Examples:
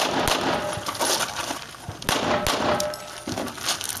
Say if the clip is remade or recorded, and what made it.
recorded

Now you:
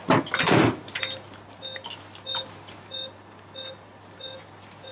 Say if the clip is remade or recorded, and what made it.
recorded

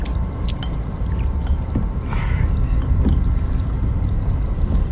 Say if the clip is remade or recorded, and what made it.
recorded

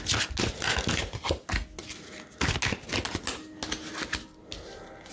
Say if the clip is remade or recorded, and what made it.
recorded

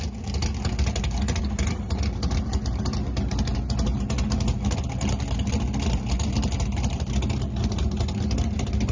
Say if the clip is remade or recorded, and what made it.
recorded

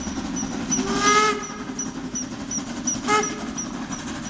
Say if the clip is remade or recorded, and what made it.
recorded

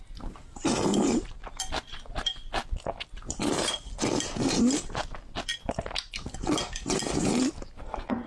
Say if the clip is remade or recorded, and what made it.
recorded